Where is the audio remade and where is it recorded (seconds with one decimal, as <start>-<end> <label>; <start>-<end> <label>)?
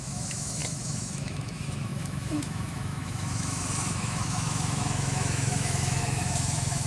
0.0-6.9 remade